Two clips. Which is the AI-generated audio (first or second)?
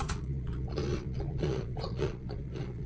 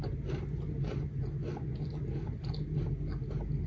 first